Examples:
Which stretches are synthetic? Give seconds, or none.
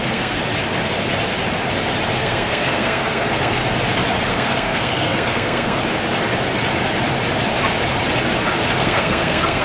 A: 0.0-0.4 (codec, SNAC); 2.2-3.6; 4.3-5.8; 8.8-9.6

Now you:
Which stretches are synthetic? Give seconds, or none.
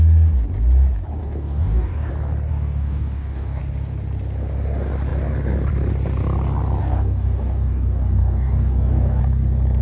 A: 1.2-2.1 (codec, DAC); 2.5-3.6; 6.8-9.2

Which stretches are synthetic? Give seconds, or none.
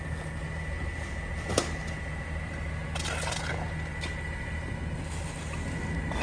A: none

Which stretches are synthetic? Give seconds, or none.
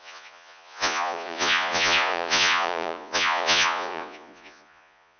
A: 0.0-5.2 (vocoder, Vocos)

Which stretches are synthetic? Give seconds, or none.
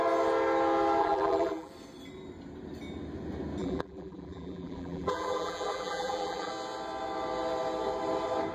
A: 1.0-1.7 (vocoder, BigVGAN v2); 3.6-6.5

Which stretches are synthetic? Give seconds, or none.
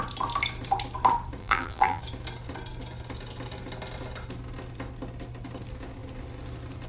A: 1.4-2.0 (vocoder, BigVGAN v2)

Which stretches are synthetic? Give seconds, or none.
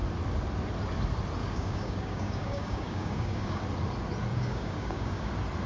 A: 1.4-3.6 (codec, DAC); 4.3-5.3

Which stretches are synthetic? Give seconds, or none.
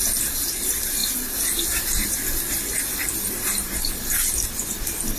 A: none